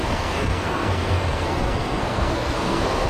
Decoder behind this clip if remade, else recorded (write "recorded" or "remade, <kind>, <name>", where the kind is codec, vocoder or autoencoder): remade, codec, SNAC